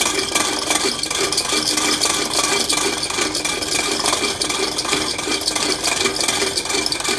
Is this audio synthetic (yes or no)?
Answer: no